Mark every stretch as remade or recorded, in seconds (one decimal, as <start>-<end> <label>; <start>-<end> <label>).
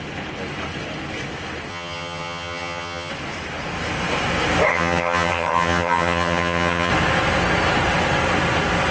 0.0-1.7 recorded; 1.7-3.1 remade; 3.1-4.7 recorded; 4.7-6.9 remade; 6.9-8.9 recorded